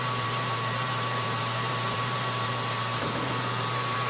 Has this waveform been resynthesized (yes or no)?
yes